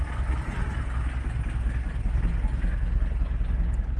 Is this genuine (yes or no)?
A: yes